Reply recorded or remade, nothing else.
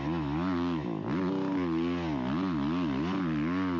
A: recorded